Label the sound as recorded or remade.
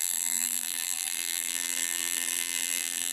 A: remade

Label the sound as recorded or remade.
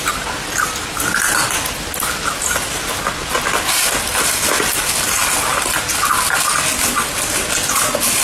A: recorded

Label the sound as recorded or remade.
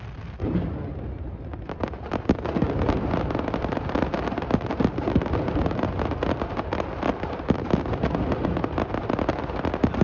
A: remade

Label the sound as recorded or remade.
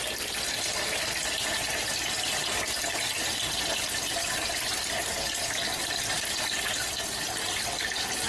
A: recorded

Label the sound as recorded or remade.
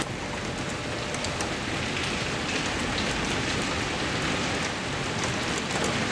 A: recorded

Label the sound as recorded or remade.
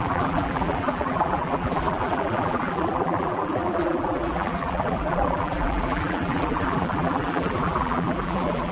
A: remade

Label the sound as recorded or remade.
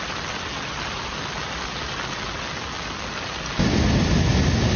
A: recorded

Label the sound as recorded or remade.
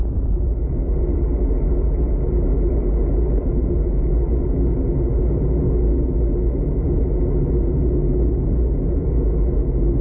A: recorded